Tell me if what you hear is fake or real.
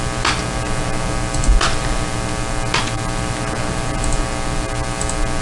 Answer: real